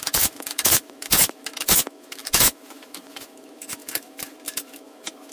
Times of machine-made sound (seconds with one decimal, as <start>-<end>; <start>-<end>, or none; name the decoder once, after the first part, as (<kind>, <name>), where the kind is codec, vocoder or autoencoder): 0.0-5.3 (autoencoder, DAC-VAE)